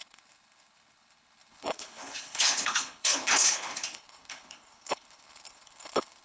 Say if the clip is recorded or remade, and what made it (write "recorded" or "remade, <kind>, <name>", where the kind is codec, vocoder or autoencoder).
remade, codec, HILCodec